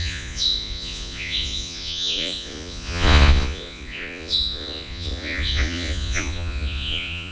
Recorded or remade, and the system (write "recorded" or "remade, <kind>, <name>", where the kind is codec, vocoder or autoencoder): remade, vocoder, Vocos